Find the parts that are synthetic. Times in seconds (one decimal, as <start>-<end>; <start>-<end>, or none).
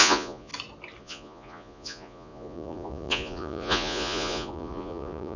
0.0-0.5; 1.0-5.4